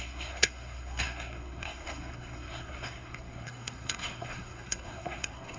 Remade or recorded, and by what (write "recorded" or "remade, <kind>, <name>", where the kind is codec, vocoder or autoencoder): remade, codec, SNAC